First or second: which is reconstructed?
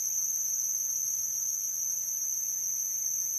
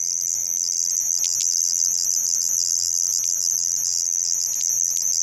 second